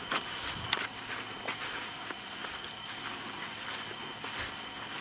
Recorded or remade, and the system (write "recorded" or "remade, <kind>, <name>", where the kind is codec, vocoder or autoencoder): recorded